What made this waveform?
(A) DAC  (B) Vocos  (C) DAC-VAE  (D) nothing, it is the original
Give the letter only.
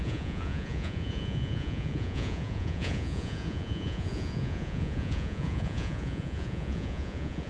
B